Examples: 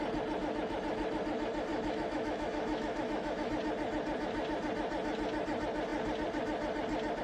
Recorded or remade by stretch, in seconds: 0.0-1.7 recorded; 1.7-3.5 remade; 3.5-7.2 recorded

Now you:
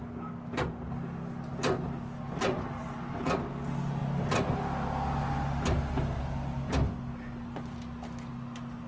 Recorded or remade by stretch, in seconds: 0.0-8.9 recorded

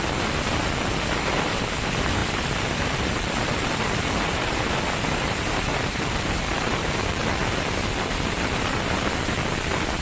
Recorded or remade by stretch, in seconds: 0.0-2.2 recorded; 2.2-7.2 remade; 7.2-10.0 recorded

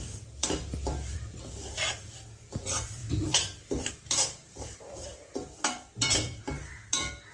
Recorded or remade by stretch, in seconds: 0.0-7.3 remade